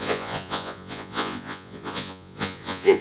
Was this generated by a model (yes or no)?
yes